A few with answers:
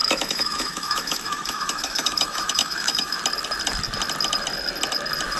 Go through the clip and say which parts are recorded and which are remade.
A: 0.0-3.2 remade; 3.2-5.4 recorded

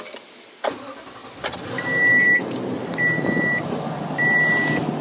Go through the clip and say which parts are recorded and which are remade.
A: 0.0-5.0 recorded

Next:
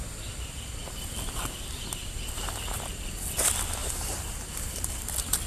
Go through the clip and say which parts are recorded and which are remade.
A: 0.0-3.8 recorded; 3.8-5.0 remade; 5.0-5.5 recorded